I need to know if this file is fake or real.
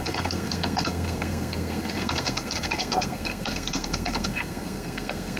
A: fake